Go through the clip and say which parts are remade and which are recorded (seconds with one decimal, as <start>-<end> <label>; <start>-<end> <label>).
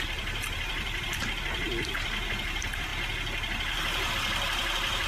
0.0-2.9 remade; 2.9-4.1 recorded; 4.1-5.1 remade